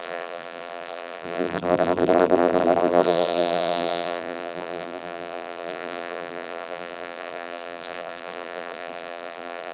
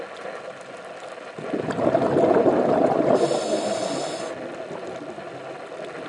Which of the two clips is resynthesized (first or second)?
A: first